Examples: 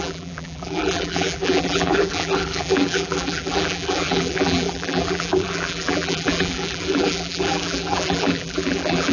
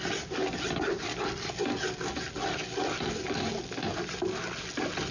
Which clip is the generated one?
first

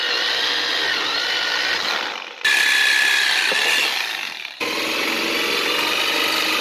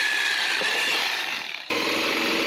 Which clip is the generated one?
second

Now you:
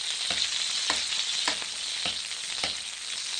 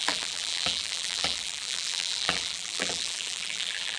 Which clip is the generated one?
second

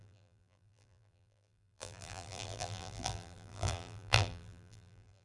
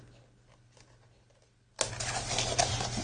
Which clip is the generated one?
first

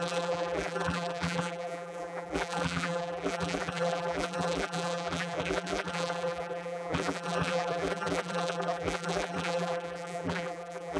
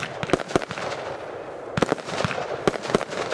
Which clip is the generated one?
first